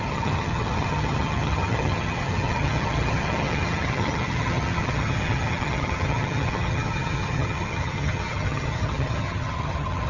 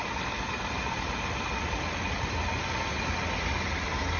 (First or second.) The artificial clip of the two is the first